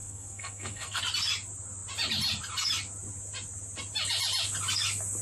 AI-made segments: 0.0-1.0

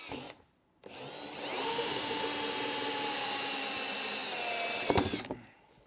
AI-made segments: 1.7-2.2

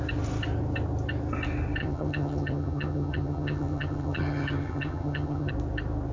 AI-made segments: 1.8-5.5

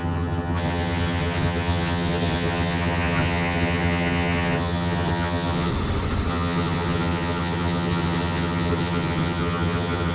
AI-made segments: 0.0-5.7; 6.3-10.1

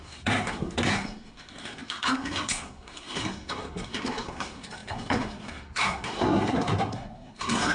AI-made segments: 0.0-7.7